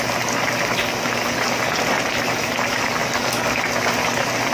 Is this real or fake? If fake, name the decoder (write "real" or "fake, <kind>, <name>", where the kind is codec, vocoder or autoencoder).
real